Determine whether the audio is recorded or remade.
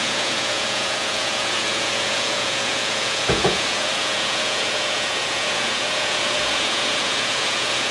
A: remade